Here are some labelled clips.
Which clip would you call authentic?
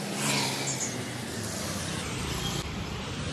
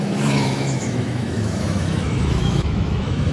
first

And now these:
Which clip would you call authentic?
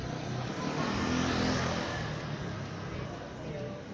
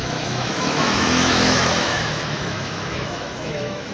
first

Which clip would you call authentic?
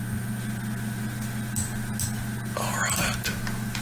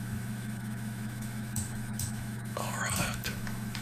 first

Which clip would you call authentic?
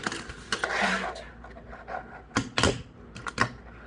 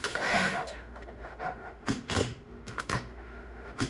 first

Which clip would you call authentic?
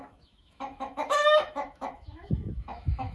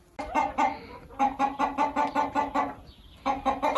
second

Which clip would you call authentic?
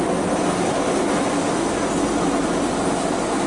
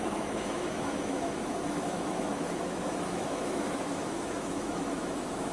first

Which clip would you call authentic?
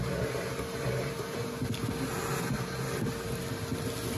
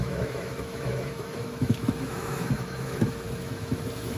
first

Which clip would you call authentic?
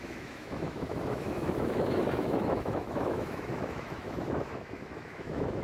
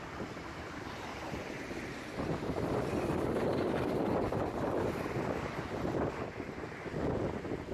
second